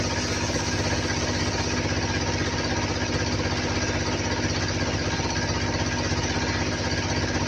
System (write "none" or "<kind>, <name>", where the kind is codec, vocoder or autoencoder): none